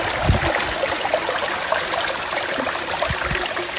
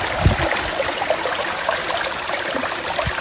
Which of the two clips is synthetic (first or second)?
second